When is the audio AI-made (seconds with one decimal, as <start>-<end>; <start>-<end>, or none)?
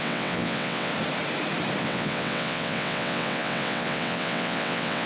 0.0-0.9; 1.8-5.1